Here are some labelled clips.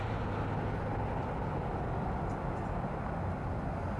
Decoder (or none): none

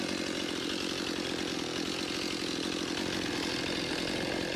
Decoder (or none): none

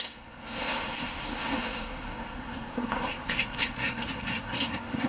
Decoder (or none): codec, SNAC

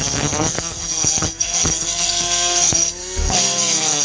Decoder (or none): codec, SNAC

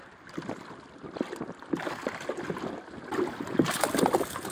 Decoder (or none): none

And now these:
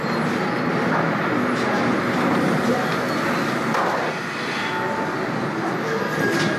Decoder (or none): none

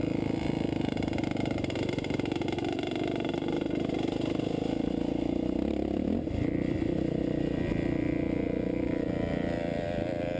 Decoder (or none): none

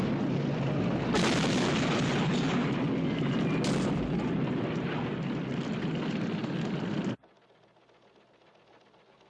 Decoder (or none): none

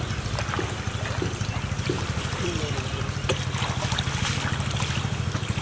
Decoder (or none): none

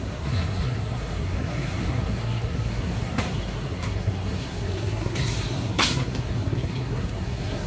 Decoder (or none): codec, SNAC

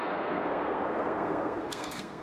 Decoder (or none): codec, SNAC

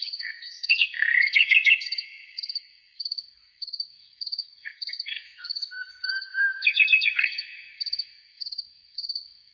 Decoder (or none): codec, SNAC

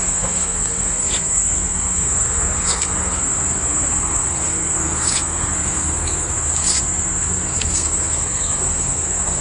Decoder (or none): codec, SNAC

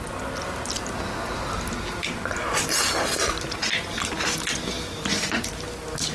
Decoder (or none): none